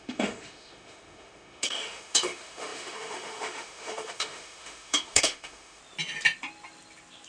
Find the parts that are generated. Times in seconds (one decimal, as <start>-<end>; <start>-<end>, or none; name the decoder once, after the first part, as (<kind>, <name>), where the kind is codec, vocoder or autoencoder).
0.0-5.8 (autoencoder, DAC-VAE)